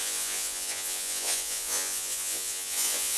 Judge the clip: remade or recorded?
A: remade